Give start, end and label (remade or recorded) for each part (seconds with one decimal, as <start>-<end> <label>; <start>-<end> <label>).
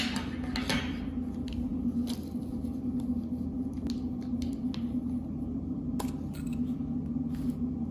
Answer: 0.0-7.9 recorded